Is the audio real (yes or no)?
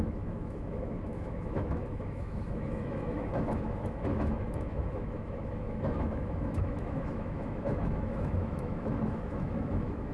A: no